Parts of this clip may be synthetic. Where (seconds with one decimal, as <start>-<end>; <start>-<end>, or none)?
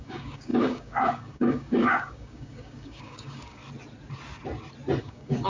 0.0-3.6; 5.0-5.5